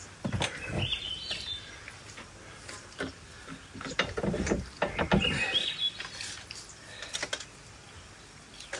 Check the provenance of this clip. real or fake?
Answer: real